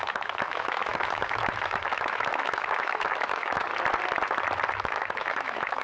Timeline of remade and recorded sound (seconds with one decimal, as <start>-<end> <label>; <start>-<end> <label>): 0.0-3.7 remade; 3.7-4.7 recorded; 4.7-5.8 remade